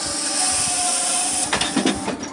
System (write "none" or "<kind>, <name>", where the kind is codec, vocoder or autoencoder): none